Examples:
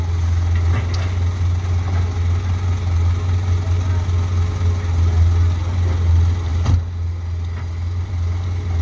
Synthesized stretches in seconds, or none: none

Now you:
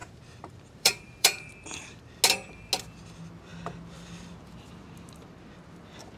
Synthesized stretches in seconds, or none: 0.0-2.2 (vocoder, BigVGAN v2)

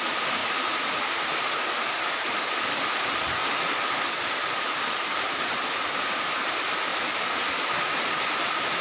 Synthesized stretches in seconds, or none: 0.0-3.4 (vocoder, BigVGAN v2); 4.5-6.9; 7.5-8.8

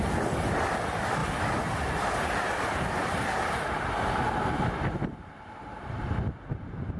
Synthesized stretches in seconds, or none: 0.0-1.2 (vocoder, BigVGAN v2); 3.6-7.0